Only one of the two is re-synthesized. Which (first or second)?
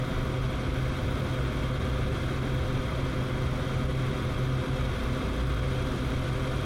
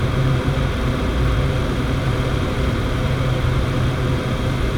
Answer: second